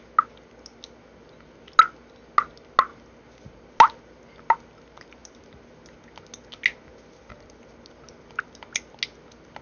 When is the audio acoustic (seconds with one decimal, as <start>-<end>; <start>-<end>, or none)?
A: 0.0-9.6